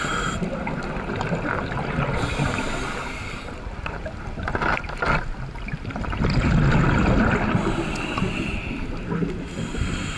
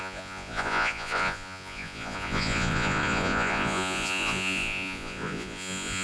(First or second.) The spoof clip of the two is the second